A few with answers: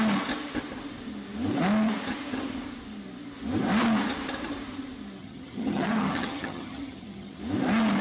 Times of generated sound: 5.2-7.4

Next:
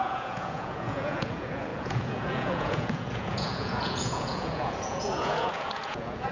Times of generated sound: 0.0-6.3

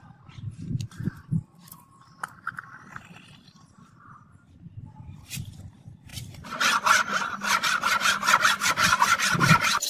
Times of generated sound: none

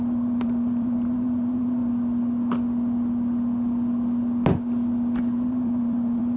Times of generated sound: 0.0-1.8; 5.2-6.4

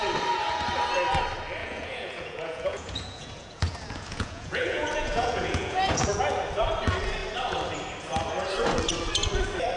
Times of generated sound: 1.6-6.2

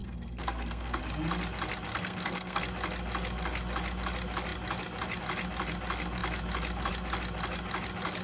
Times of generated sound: 0.0-1.0; 1.9-2.6